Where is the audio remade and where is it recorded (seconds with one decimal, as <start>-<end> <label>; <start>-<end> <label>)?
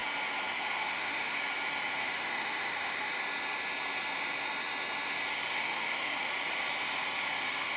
0.0-0.6 recorded; 0.6-1.4 remade; 1.4-2.0 recorded; 2.0-3.2 remade; 3.2-5.5 recorded; 5.5-6.3 remade; 6.3-7.3 recorded; 7.3-7.8 remade